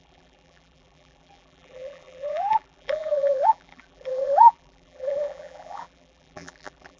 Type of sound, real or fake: fake